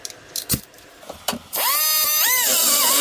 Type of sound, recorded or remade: recorded